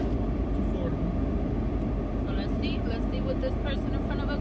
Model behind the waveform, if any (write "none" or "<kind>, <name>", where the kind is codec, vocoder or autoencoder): none